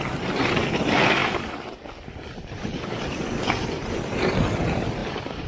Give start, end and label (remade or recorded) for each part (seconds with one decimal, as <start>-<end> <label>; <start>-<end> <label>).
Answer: 0.0-1.2 recorded; 1.2-4.5 remade; 4.5-5.0 recorded; 5.0-5.5 remade

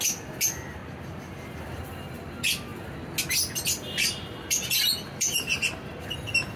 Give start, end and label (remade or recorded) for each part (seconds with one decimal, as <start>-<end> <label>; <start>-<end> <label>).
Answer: 0.0-0.8 remade; 0.8-1.6 recorded; 1.6-2.7 remade; 2.7-3.3 recorded; 3.3-6.6 remade

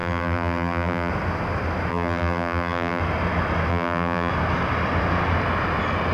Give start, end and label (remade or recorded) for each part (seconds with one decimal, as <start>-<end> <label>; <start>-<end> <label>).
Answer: 0.0-1.1 remade; 1.1-1.9 recorded; 1.9-3.0 remade; 3.0-3.7 recorded; 3.7-4.3 remade; 4.3-6.1 recorded

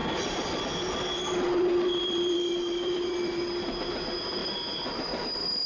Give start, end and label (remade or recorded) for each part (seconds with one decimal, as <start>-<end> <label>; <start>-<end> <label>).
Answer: 0.0-3.4 remade; 3.4-5.7 recorded

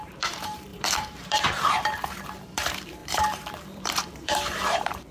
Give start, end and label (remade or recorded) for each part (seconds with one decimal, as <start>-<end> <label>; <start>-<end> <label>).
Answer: 0.0-5.1 remade

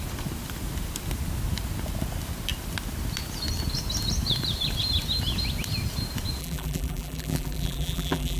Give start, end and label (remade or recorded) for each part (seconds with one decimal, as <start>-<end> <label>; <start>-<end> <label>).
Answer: 0.0-6.4 recorded; 6.4-8.4 remade

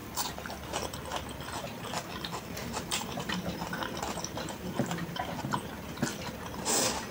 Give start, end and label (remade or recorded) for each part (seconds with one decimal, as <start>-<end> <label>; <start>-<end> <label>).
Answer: 0.0-2.6 recorded; 2.6-5.3 remade; 5.3-7.1 recorded

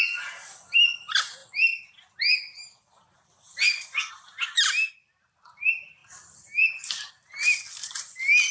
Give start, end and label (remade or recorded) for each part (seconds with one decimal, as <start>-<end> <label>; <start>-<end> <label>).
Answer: 0.0-8.5 recorded